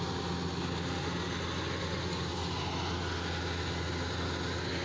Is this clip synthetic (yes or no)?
no